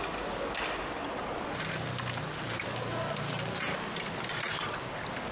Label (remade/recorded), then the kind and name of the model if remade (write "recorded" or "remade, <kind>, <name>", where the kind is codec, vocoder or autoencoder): recorded